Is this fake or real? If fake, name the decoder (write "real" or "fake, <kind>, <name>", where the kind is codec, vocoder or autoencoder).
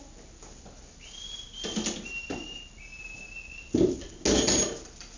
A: real